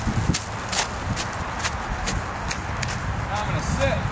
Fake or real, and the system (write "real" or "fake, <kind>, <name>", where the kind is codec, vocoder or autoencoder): real